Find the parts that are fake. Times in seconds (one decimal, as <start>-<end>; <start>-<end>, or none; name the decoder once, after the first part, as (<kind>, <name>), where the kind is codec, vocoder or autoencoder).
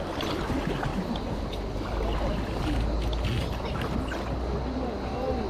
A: none